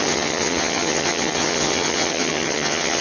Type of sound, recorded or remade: remade